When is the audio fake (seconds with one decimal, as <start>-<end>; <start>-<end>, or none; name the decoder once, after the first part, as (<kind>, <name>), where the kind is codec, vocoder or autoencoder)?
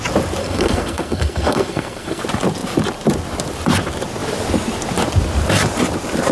0.4-2.2 (codec, SNAC)